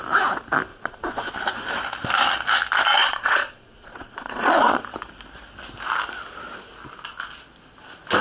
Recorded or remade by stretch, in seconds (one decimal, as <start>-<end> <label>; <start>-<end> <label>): 0.0-0.7 recorded; 0.7-1.3 remade; 1.3-3.0 recorded; 3.0-4.8 remade; 4.8-8.2 recorded